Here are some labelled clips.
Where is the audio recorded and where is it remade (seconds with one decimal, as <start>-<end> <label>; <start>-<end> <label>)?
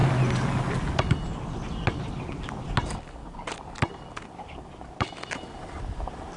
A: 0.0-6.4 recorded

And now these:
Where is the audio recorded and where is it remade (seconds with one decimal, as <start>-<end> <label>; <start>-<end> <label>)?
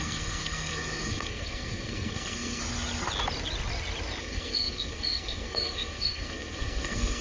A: 0.0-2.6 remade; 2.6-4.2 recorded; 4.2-7.2 remade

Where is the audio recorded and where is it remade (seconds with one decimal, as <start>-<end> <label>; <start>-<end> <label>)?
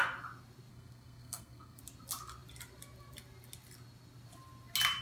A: 0.0-0.7 recorded; 0.7-1.8 remade; 1.8-5.0 recorded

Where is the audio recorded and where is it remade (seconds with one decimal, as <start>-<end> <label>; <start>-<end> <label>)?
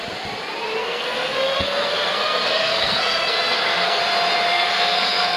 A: 0.0-0.8 recorded; 0.8-4.0 remade; 4.0-4.5 recorded; 4.5-5.4 remade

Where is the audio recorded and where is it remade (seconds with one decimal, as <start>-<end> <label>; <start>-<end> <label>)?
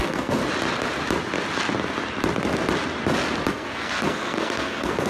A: 0.0-0.4 remade; 0.4-3.5 recorded; 3.5-5.1 remade